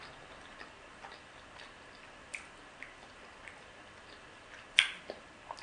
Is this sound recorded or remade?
recorded